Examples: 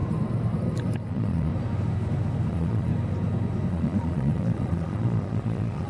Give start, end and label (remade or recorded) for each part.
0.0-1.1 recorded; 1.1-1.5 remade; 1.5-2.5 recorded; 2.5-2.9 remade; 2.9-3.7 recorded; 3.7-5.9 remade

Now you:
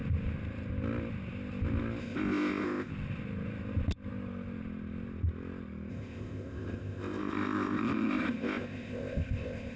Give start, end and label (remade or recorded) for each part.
0.0-2.0 recorded; 2.0-2.9 remade; 2.9-5.9 recorded; 5.9-9.8 remade

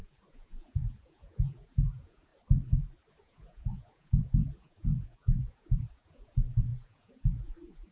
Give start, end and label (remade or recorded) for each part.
0.0-2.3 remade; 2.3-3.2 recorded; 3.2-7.9 remade

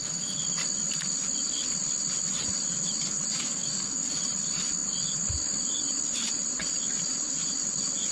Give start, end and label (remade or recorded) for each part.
0.0-3.3 recorded; 3.3-4.2 remade; 4.2-8.1 recorded